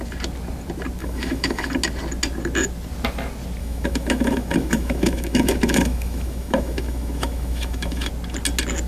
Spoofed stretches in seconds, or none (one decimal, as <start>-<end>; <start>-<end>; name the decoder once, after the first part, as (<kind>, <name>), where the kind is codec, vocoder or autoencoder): 1.0-1.7 (autoencoder, DAC-VAE); 3.6-8.1